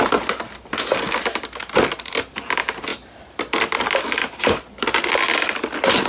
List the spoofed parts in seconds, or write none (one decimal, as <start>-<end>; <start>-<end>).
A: none